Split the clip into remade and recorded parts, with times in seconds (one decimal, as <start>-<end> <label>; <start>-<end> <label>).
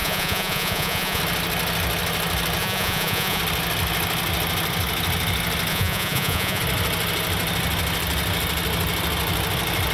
0.0-1.2 remade; 1.2-2.6 recorded; 2.6-3.4 remade; 3.4-5.7 recorded; 5.7-6.6 remade; 6.6-9.9 recorded